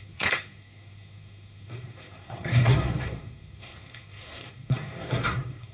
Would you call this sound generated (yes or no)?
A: yes